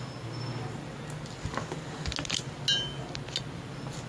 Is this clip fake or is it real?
real